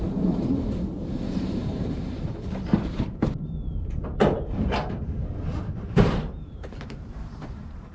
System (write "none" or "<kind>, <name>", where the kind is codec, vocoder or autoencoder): vocoder, BigVGAN v2